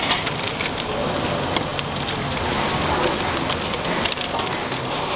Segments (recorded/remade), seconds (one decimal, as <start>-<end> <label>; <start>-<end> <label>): 0.0-5.2 recorded

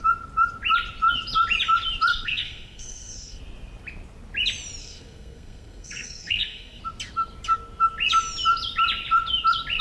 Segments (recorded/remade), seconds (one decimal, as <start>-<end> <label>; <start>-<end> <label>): 0.0-2.1 recorded; 2.1-3.4 remade; 3.4-4.8 recorded; 4.8-6.8 remade; 6.8-9.8 recorded

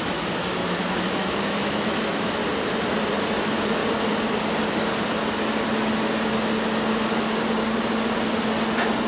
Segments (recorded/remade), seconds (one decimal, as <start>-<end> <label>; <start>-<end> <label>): 0.0-2.4 remade; 2.4-3.4 recorded; 3.4-3.8 remade; 3.8-9.1 recorded

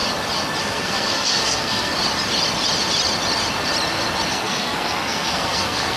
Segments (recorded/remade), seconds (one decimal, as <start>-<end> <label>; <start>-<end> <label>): 0.0-0.6 recorded; 0.6-1.9 remade; 1.9-4.3 recorded; 4.3-6.0 remade

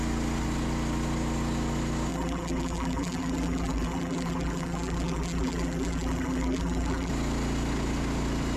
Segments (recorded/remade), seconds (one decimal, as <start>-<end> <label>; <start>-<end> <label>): 0.0-2.1 recorded; 2.1-7.1 remade; 7.1-8.6 recorded